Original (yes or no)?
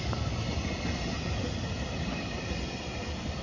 yes